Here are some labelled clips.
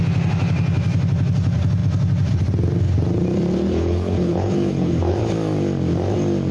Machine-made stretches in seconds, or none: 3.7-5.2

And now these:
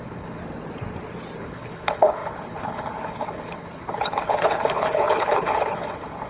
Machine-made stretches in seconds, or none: 0.0-0.4; 1.4-6.3

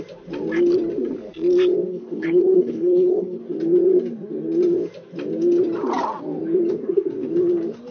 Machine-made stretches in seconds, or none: 1.9-3.4

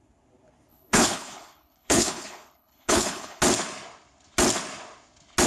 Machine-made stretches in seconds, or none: 0.7-3.4

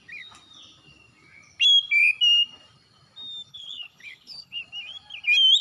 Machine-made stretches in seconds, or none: 3.5-4.6

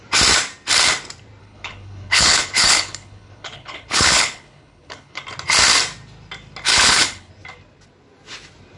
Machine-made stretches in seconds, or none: 1.4-5.2; 6.7-7.3

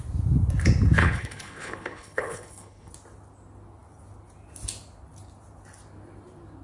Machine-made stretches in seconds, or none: 1.0-2.9